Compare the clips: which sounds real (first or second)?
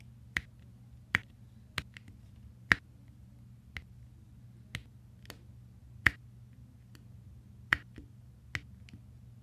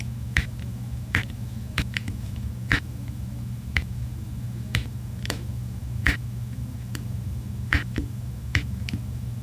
first